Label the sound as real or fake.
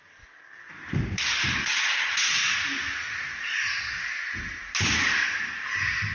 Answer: real